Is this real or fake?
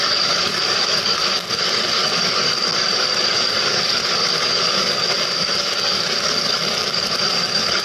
fake